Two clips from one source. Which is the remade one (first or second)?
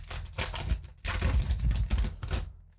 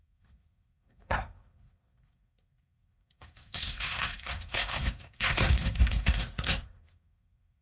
second